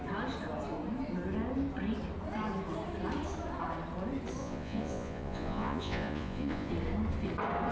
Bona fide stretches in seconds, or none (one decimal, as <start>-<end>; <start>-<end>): 0.0-4.4; 6.7-7.7